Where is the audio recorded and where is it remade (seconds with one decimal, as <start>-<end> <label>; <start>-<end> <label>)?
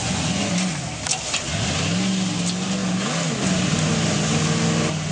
0.0-0.5 remade; 0.5-5.1 recorded